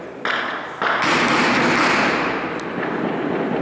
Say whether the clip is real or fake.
real